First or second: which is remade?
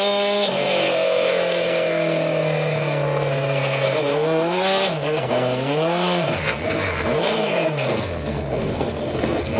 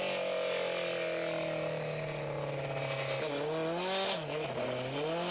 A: first